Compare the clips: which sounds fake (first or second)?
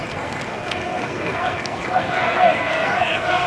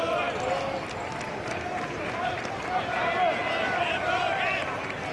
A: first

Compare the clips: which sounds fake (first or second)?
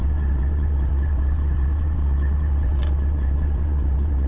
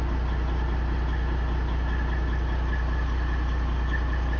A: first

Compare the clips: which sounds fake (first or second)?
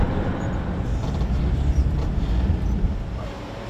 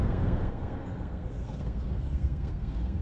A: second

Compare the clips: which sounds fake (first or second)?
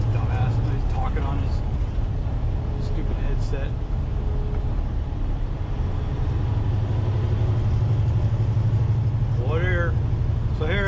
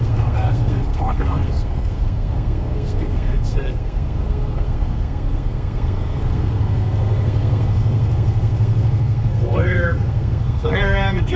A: second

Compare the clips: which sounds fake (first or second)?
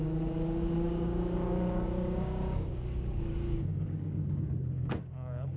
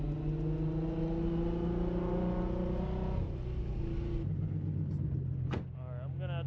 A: first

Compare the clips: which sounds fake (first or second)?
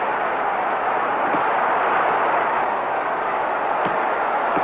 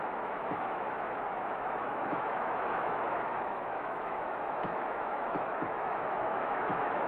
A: second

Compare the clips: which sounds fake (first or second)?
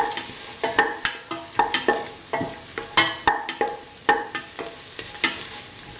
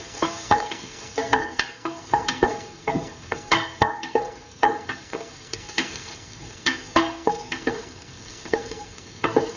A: second